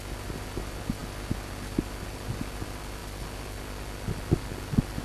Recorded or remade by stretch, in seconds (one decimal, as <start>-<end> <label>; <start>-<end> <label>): 0.0-5.0 recorded

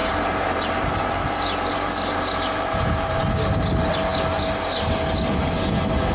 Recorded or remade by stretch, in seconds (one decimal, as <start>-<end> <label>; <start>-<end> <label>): 0.0-3.2 remade; 3.2-6.1 recorded

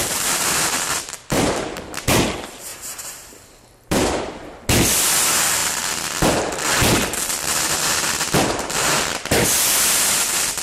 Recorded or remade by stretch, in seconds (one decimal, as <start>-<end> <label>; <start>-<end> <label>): 0.0-1.9 remade; 1.9-2.7 recorded; 2.7-4.2 remade; 4.2-10.6 recorded

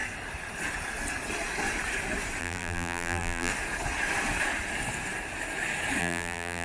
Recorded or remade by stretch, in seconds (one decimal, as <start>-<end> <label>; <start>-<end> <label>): 0.0-2.4 recorded; 2.4-3.5 remade; 3.5-6.0 recorded; 6.0-6.6 remade

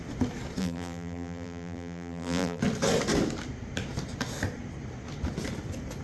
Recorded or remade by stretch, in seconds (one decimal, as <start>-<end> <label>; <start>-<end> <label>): 0.0-0.6 recorded; 0.6-2.6 remade; 2.6-6.0 recorded

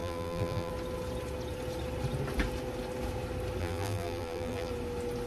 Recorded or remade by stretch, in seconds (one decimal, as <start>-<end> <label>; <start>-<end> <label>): 0.0-0.7 remade; 0.7-3.6 recorded; 3.6-4.7 remade; 4.7-5.3 recorded

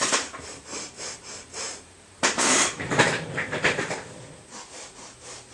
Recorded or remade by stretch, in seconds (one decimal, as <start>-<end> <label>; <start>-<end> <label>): 0.0-0.7 recorded; 0.7-3.9 remade; 3.9-5.5 recorded